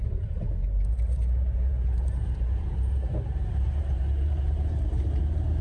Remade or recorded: remade